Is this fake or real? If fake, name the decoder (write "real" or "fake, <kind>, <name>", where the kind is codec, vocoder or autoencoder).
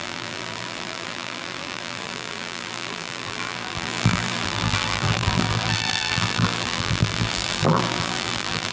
fake, vocoder, BigVGAN v2